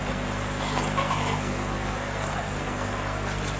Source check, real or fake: fake